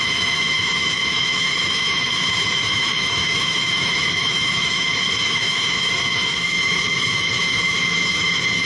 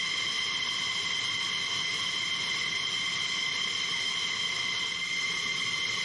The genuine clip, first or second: second